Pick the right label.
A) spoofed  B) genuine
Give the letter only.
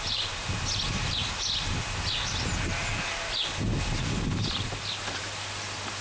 B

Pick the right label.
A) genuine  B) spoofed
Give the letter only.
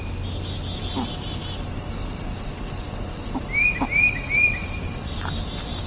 A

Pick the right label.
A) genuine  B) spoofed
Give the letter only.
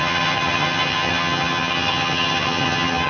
B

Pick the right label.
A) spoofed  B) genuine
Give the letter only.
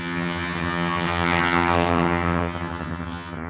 A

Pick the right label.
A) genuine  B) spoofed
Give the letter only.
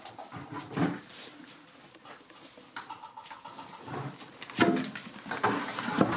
A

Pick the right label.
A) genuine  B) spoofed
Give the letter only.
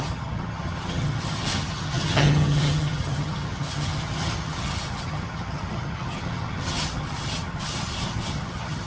B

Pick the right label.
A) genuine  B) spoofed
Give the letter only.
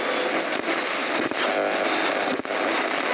A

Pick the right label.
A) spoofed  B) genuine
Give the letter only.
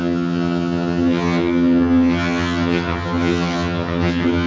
A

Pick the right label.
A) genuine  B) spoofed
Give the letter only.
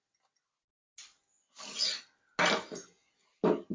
A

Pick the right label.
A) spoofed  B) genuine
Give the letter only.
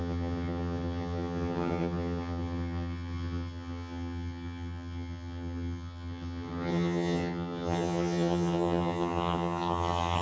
A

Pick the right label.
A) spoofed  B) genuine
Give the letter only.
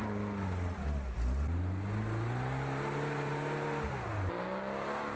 B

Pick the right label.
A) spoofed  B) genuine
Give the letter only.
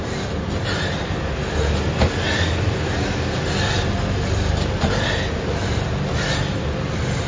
B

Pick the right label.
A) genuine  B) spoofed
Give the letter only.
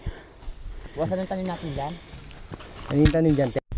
A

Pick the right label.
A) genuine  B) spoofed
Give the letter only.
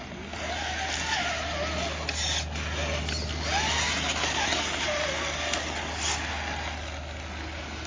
A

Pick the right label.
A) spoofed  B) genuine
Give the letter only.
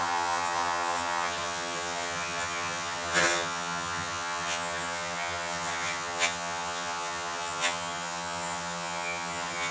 A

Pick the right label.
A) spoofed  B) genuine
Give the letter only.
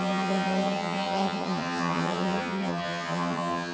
A